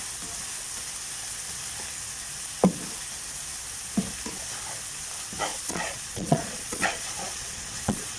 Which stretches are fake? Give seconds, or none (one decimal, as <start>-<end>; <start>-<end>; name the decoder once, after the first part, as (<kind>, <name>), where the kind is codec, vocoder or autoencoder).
5.5-8.2 (vocoder, Vocos)